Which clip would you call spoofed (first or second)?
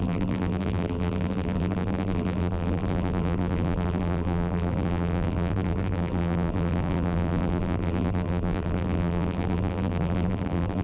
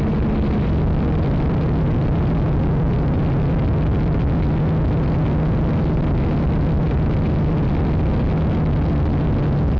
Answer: first